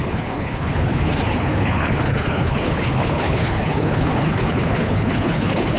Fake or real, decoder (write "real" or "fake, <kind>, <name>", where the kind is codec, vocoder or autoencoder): fake, codec, HILCodec